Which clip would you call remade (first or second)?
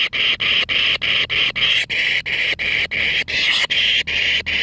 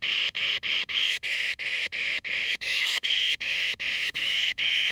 second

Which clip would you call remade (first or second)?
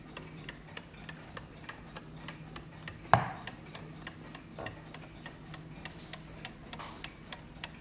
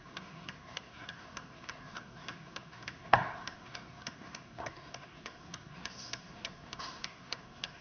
second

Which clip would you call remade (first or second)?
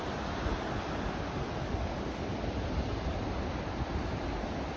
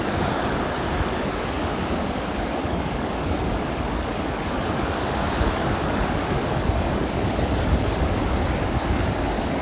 second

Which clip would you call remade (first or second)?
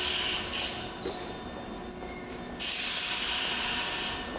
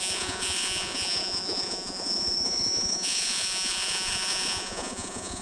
second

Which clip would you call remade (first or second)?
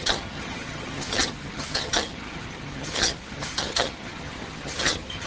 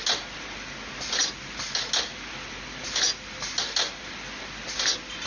first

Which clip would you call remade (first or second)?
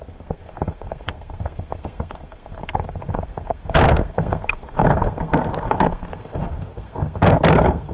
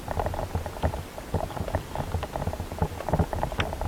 first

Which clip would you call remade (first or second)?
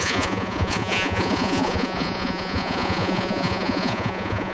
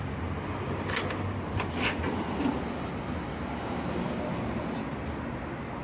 first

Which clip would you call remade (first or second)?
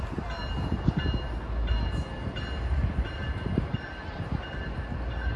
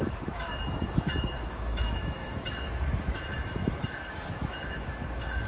second